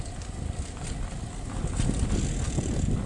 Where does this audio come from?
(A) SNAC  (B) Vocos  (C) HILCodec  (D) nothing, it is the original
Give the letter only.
D